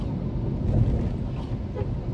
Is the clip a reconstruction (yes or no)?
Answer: no